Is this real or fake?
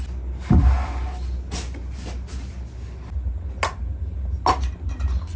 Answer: real